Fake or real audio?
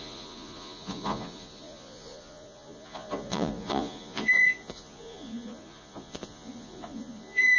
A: fake